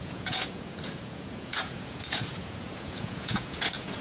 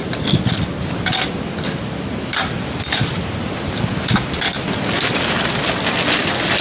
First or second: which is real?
second